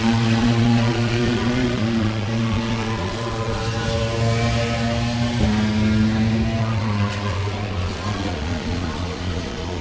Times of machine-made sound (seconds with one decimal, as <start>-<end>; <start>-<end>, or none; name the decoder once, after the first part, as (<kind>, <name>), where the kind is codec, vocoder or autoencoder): 0.0-3.6 (vocoder, Vocos); 6.6-9.8